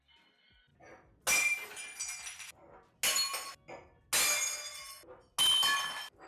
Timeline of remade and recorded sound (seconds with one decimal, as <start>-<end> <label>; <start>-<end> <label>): 0.0-6.3 recorded